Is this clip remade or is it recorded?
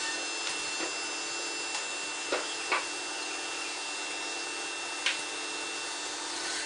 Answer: recorded